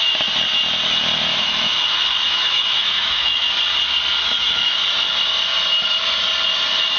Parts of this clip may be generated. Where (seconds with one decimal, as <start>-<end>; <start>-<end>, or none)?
1.3-3.5; 4.3-4.9